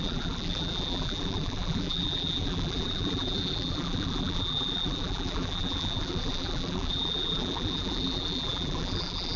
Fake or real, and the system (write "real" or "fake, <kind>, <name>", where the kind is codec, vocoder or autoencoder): fake, vocoder, BigVGAN v2